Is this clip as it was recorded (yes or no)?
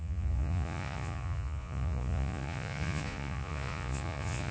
no